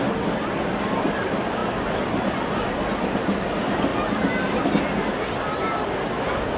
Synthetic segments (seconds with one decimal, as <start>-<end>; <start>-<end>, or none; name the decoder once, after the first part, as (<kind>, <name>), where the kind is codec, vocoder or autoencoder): none